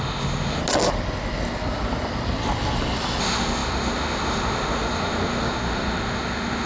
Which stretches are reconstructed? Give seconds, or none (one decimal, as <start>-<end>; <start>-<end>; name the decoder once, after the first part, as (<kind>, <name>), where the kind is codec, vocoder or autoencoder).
0.0-0.6 (autoencoder, DAC-VAE); 3.2-6.7